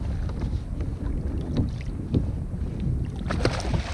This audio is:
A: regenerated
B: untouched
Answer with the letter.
B